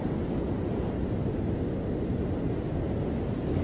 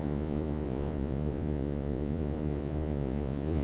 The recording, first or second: first